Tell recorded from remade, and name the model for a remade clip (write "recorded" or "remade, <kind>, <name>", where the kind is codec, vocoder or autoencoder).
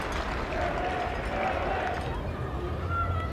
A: recorded